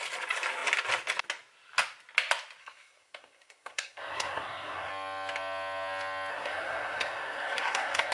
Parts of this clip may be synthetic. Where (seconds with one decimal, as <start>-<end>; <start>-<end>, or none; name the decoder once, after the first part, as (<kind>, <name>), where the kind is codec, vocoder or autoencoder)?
2.6-4.9 (codec, SNAC); 6.3-8.1